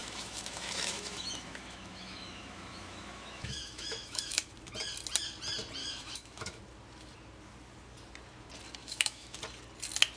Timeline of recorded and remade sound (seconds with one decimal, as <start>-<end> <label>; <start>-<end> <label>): 0.0-4.5 remade; 4.5-5.8 recorded; 5.8-6.6 remade; 6.6-8.8 recorded; 8.8-9.4 remade; 9.4-10.2 recorded